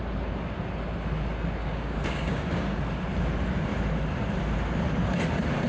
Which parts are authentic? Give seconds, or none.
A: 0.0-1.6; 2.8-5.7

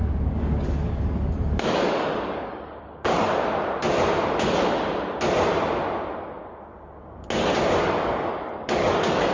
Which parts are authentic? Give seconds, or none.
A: 3.4-7.8

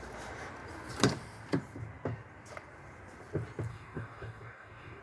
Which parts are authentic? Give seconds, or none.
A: 0.0-3.7

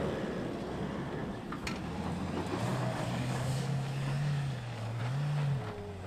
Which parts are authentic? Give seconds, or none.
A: 0.0-2.7; 5.0-6.1

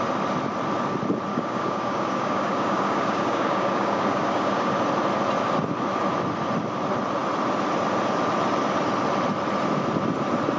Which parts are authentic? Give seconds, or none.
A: 0.0-1.3; 4.7-10.6

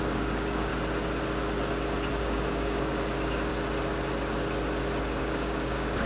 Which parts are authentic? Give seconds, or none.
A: 0.7-2.1; 3.5-5.2

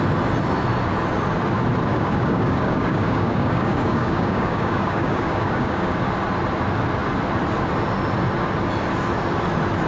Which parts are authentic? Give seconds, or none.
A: 0.0-1.9; 6.0-9.9

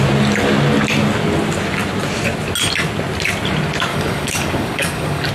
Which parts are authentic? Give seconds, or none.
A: 0.0-3.9